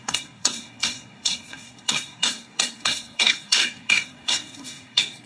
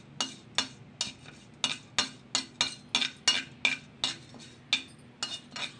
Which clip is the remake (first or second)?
first